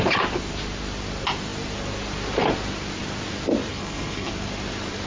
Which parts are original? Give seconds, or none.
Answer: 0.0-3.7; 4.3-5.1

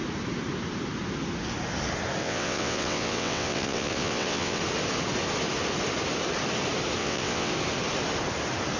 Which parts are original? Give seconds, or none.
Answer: 0.0-2.2; 4.6-7.0; 7.5-8.8

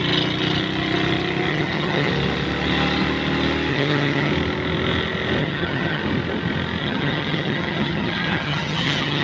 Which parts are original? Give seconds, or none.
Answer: 0.0-1.5; 2.1-3.7; 4.3-5.4; 6.0-6.8

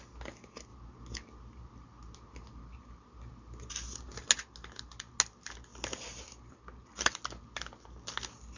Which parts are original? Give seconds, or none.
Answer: 0.0-8.6